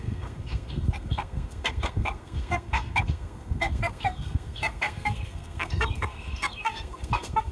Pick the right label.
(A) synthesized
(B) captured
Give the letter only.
A